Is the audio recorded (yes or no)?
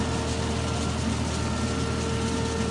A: yes